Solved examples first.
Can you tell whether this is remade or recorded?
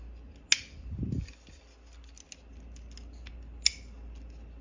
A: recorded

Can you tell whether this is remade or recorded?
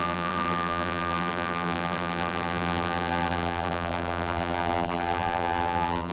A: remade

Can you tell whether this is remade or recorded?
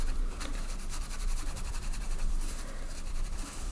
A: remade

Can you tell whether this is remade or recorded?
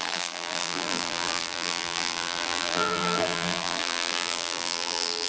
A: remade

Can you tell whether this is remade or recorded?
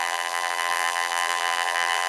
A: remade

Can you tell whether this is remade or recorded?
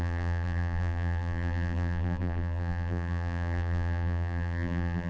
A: remade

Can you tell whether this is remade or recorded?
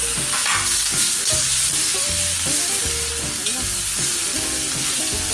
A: recorded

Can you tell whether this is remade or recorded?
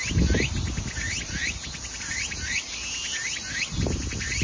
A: recorded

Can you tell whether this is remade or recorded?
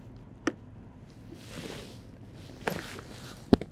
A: recorded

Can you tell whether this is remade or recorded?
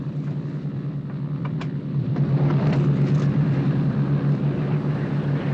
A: remade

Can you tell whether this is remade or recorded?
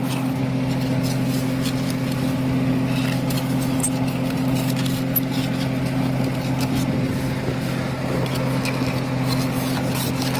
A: recorded